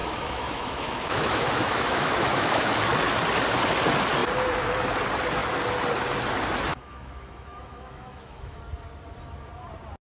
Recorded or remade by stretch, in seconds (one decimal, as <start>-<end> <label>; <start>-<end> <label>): 0.0-2.7 remade; 2.7-6.7 recorded; 6.7-8.6 remade; 8.6-10.0 recorded